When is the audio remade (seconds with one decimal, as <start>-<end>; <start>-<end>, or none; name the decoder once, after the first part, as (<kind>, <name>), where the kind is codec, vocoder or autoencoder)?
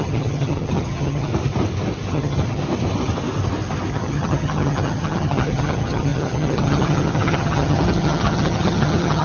0.0-1.3 (vocoder, HiFi-GAN); 2.1-2.6; 3.9-9.2